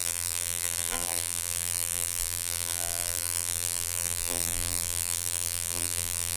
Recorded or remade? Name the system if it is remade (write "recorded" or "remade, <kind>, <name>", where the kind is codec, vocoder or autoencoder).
remade, vocoder, BigVGAN v2